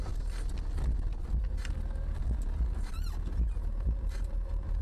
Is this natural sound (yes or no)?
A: yes